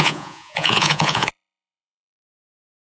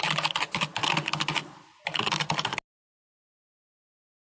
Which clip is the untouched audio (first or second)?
second